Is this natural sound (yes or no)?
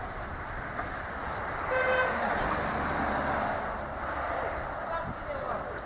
yes